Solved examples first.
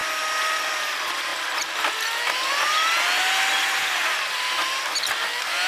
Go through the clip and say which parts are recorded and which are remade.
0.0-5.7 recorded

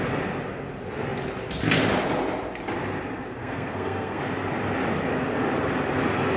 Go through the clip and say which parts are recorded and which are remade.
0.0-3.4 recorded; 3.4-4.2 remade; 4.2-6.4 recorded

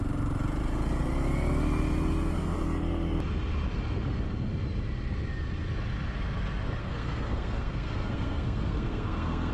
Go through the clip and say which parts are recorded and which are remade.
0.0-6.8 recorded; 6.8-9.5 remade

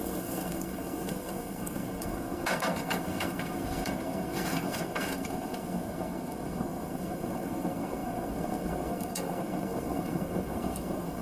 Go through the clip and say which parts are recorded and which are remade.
0.0-11.2 remade

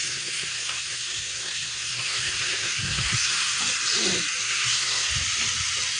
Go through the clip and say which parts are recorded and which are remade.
0.0-3.6 remade; 3.6-4.4 recorded; 4.4-5.1 remade; 5.1-6.0 recorded